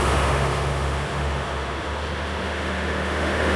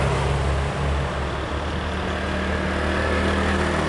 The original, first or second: second